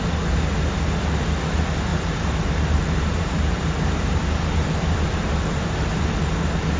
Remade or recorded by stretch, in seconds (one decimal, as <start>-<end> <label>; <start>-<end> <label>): 0.0-1.9 recorded; 1.9-6.0 remade; 6.0-6.8 recorded